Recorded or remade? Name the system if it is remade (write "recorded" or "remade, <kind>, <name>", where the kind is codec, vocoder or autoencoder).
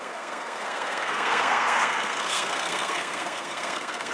remade, codec, SNAC